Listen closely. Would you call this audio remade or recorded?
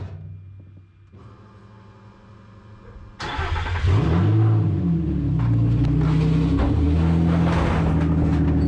recorded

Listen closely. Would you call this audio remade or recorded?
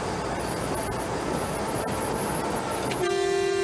recorded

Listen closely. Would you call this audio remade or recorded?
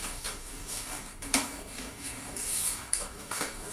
remade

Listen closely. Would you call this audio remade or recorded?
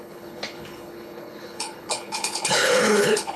remade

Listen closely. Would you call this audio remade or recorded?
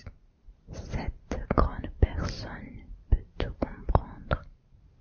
remade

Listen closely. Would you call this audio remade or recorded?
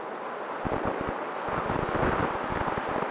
recorded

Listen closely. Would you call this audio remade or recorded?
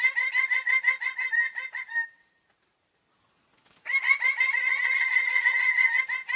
recorded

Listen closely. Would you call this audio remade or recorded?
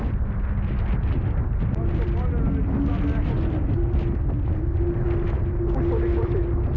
recorded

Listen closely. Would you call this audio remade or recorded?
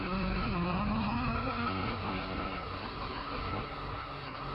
remade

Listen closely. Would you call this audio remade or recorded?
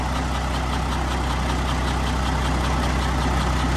recorded